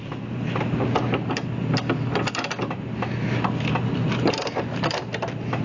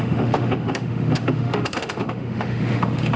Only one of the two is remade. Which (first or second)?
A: second